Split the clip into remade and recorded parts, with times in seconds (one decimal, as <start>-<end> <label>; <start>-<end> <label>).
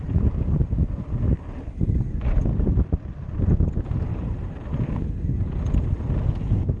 0.0-2.5 recorded; 2.5-3.3 remade; 3.3-4.1 recorded; 4.1-4.9 remade; 4.9-6.8 recorded